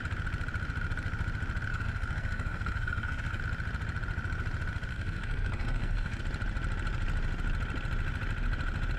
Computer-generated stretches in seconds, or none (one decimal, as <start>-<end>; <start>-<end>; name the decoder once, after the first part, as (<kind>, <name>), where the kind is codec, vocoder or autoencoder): 1.7-3.4 (codec, SNAC); 4.9-6.2